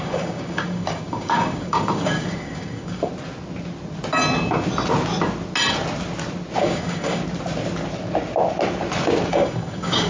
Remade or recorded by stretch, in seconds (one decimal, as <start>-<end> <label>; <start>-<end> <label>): 0.0-3.1 remade; 3.1-6.6 recorded; 6.6-7.2 remade; 7.2-9.3 recorded; 9.3-10.1 remade